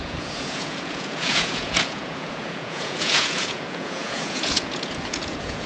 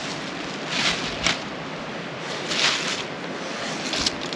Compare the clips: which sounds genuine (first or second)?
second